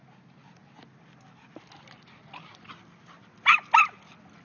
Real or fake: real